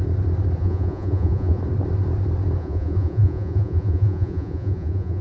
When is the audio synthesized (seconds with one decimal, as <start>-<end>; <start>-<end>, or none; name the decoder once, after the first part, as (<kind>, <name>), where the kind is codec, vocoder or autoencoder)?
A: 0.6-1.6 (vocoder, Vocos); 2.6-5.2